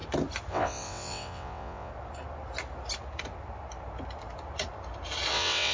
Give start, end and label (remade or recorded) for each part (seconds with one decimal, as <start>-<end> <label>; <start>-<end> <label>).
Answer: 0.0-0.5 recorded; 0.5-1.9 remade; 1.9-5.3 recorded; 5.3-5.7 remade